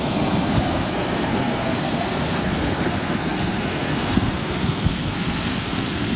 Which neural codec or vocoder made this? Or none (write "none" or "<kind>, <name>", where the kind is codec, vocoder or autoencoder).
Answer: codec, SNAC